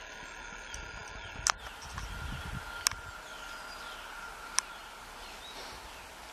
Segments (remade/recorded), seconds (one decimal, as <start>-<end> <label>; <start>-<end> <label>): 0.0-6.3 recorded